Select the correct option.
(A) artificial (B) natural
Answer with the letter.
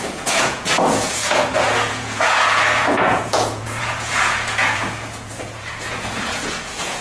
A